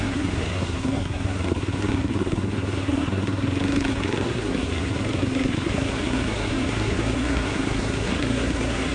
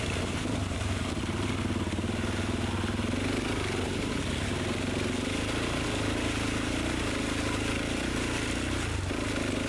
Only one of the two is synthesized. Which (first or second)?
first